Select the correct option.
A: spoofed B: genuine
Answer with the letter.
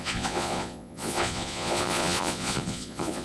A